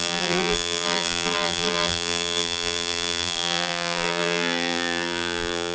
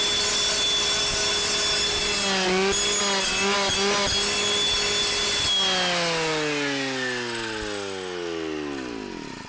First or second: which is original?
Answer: second